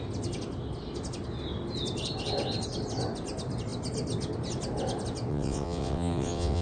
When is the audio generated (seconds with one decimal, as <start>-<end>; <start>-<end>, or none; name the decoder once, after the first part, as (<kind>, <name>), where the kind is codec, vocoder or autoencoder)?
5.3-6.6 (vocoder, WaveNeXt)